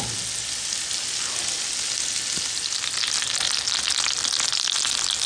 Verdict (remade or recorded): recorded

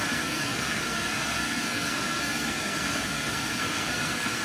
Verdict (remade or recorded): remade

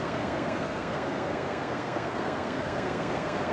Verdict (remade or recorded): remade